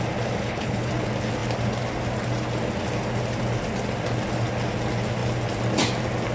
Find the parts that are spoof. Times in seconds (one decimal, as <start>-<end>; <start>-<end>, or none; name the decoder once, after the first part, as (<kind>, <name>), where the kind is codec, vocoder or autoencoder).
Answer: 0.4-0.9 (codec, HILCodec)